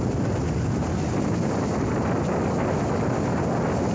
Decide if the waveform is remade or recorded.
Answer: recorded